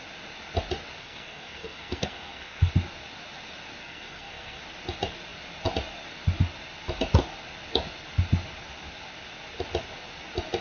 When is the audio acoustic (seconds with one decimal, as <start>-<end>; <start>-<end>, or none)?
0.0-1.0; 2.7-3.8; 4.6-10.6